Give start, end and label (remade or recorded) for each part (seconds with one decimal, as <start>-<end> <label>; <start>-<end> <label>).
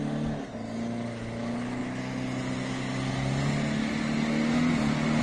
0.0-5.2 recorded